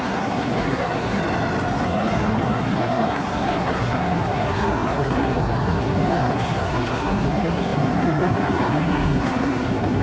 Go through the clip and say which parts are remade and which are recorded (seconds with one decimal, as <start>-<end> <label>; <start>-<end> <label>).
0.0-1.2 remade; 1.2-1.8 recorded; 1.8-10.0 remade